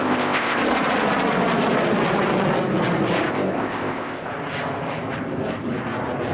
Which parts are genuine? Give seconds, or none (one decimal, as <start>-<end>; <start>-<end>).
0.6-3.3; 4.3-6.3